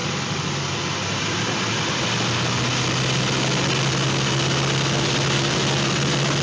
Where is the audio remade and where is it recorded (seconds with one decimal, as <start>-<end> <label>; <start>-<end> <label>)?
0.0-6.4 recorded